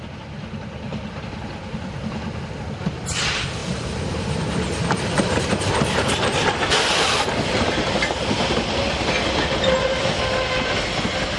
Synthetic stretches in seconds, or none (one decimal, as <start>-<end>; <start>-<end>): none

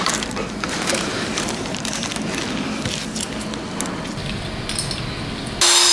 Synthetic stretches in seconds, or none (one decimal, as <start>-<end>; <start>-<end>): 0.0-2.1